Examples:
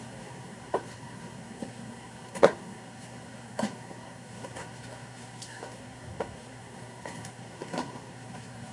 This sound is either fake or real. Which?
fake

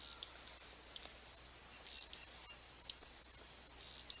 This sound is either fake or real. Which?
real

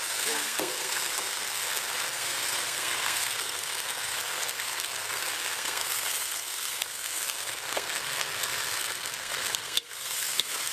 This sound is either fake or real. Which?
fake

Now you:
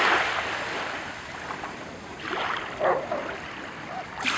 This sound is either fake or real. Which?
real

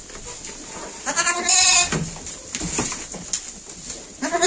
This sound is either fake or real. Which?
real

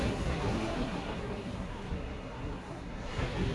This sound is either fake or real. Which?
fake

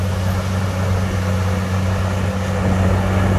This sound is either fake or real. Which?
real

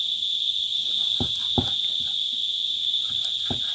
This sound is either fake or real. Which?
real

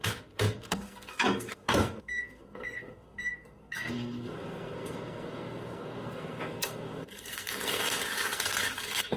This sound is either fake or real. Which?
fake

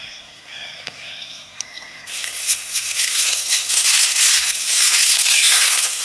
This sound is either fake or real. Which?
fake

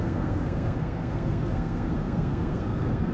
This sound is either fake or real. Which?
fake